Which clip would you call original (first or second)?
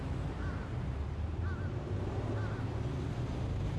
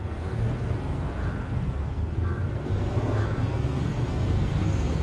first